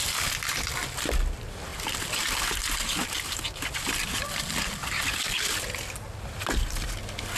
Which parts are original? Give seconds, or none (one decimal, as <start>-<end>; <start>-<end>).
0.0-1.7; 4.2-4.8; 6.9-7.4